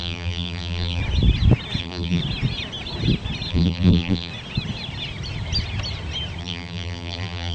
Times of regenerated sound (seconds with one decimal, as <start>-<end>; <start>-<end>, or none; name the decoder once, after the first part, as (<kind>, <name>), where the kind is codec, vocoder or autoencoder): 0.0-1.0 (vocoder, BigVGAN v2); 1.8-2.2; 3.5-4.3; 6.4-7.5